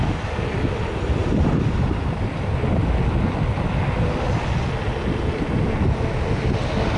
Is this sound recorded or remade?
recorded